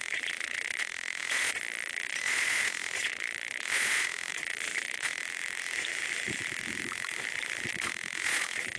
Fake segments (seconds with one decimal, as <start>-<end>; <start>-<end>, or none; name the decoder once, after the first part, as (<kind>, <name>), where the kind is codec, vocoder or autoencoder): 0.0-5.2 (vocoder, Vocos); 7.7-8.8